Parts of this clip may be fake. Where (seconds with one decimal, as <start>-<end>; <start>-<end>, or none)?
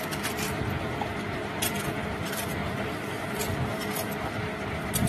2.6-3.5